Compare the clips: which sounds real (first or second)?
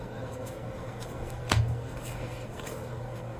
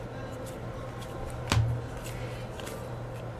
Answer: second